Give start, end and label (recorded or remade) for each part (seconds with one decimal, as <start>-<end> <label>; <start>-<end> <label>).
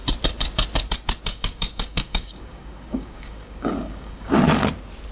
0.0-1.3 recorded; 1.3-4.4 remade; 4.4-5.1 recorded